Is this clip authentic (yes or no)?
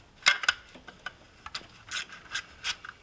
yes